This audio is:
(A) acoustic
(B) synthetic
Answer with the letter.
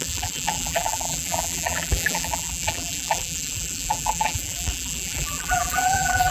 B